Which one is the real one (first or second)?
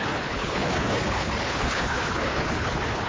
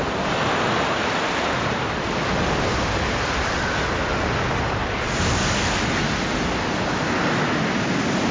second